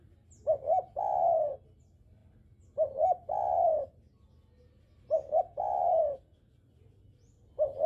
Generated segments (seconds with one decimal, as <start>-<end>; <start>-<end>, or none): none